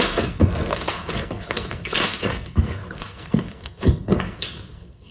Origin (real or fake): fake